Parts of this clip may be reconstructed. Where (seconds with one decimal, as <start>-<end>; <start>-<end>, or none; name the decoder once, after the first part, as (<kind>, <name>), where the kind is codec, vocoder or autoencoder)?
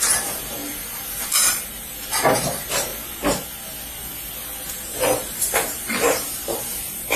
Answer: 0.0-2.9 (vocoder, BigVGAN v2); 4.7-7.2